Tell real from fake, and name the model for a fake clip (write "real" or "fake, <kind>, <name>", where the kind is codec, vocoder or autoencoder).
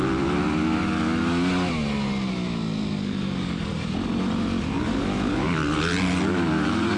real